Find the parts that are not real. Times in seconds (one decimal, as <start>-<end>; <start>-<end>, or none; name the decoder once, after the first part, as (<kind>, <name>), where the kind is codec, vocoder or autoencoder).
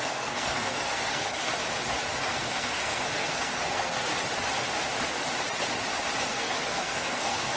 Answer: 0.0-1.5 (codec, SNAC); 2.2-4.1; 6.3-7.6